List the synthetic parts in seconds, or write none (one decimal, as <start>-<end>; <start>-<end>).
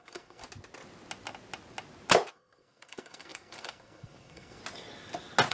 0.0-0.4; 2.3-4.6